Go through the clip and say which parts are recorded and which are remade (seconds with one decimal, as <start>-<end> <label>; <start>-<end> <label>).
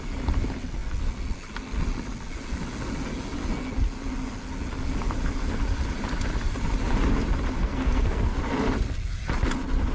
0.0-7.6 recorded; 7.6-8.4 remade; 8.4-9.9 recorded